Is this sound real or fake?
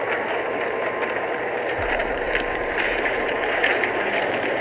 fake